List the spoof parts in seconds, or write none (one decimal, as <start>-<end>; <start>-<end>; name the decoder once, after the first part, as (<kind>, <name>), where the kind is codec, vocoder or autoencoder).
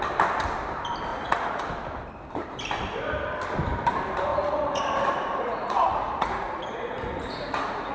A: 1.1-1.6 (vocoder, Vocos); 4.3-7.9